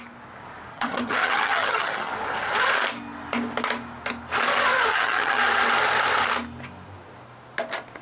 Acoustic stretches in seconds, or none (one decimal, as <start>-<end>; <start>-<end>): 0.0-0.7; 2.1-4.9; 5.4-8.0